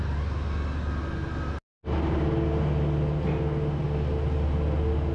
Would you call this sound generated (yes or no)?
no